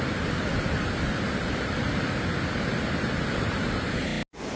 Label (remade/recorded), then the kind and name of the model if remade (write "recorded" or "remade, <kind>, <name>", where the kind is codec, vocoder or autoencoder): recorded